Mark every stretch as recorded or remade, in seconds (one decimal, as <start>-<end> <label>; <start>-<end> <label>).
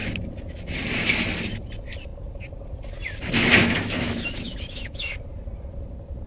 0.0-3.6 recorded; 3.6-5.1 remade; 5.1-6.3 recorded